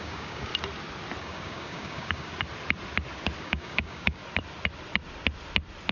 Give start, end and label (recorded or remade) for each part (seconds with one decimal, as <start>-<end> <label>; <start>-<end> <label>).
0.0-0.5 remade; 0.5-1.2 recorded; 1.2-2.3 remade; 2.3-3.4 recorded; 3.4-4.2 remade; 4.2-5.9 recorded